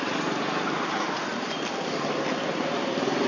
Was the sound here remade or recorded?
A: recorded